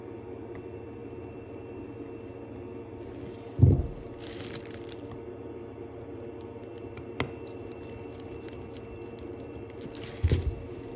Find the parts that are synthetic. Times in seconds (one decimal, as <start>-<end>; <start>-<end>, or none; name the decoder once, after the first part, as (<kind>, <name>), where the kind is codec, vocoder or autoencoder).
1.0-1.8 (vocoder, BigVGAN v2)